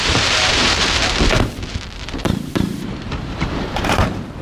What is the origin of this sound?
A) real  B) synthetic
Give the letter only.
B